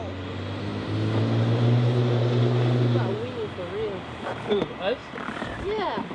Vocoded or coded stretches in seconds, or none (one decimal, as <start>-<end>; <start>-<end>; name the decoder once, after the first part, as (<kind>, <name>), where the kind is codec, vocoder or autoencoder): 5.0-6.1 (vocoder, BigVGAN v2)